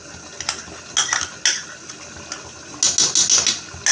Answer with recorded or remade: recorded